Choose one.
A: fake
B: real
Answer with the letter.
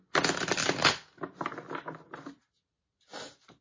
B